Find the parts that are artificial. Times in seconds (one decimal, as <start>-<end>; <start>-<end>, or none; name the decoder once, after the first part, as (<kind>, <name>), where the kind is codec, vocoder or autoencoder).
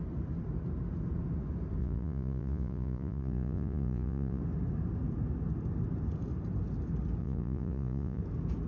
1.8-4.4 (vocoder, Vocos); 7.2-8.2